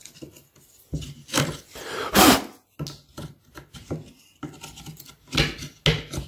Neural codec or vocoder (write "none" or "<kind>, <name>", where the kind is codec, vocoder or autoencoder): none